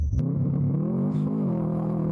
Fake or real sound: fake